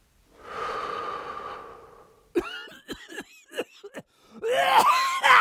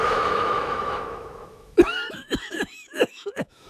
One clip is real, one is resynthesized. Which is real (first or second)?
first